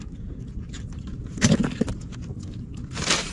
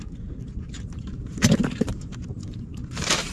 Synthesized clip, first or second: second